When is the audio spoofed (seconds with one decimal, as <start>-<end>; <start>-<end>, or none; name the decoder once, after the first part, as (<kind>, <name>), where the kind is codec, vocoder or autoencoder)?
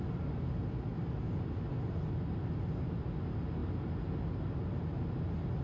none